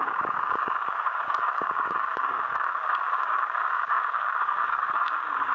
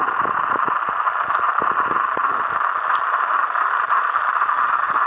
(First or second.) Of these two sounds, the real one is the second